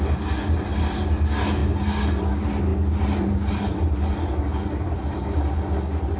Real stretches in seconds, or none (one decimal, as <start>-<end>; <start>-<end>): 0.0-6.2